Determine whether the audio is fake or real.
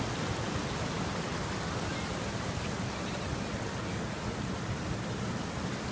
real